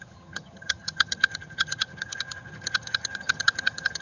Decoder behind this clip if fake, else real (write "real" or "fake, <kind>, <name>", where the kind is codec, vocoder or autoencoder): fake, vocoder, HiFi-GAN